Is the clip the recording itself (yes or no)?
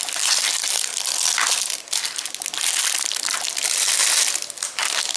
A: yes